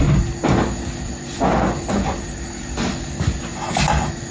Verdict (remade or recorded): recorded